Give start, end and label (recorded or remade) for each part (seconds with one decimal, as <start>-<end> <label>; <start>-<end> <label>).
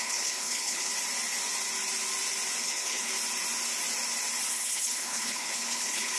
0.0-0.9 remade; 0.9-2.6 recorded; 2.6-3.1 remade; 3.1-4.5 recorded; 4.5-6.2 remade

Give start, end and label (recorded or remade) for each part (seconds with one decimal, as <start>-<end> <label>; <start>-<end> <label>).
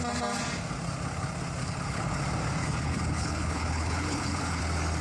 0.0-1.6 recorded; 1.6-2.2 remade; 2.2-2.6 recorded; 2.6-4.6 remade; 4.6-5.0 recorded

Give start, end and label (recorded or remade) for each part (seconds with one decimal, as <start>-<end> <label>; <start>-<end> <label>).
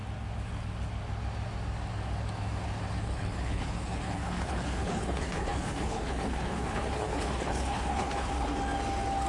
0.0-3.0 recorded; 3.0-8.5 remade; 8.5-9.3 recorded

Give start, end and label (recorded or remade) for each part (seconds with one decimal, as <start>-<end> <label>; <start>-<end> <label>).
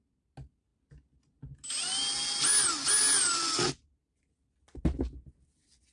0.0-5.9 recorded